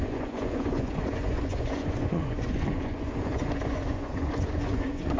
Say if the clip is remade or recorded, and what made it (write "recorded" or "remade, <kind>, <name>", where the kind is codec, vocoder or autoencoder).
remade, vocoder, Vocos